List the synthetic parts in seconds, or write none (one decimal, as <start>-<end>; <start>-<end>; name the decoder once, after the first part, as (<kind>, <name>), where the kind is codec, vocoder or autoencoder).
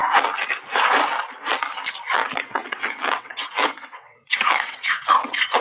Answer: 2.1-5.6 (vocoder, WaveNeXt)